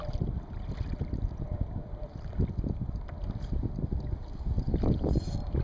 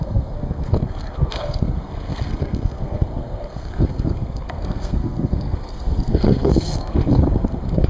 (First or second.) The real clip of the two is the first